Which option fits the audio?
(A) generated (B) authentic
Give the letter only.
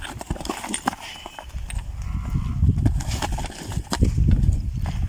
B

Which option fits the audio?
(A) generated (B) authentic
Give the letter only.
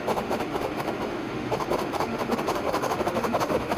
A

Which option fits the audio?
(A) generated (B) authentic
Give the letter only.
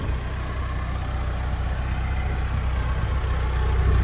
B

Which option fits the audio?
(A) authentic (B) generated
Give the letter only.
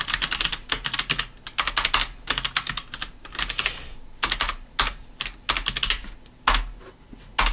A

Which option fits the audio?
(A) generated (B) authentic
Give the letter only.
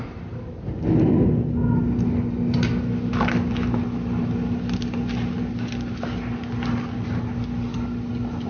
B